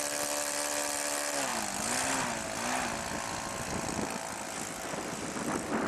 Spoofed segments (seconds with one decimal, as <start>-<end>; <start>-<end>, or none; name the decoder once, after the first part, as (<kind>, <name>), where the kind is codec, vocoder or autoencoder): none